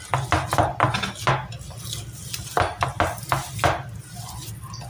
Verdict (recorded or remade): recorded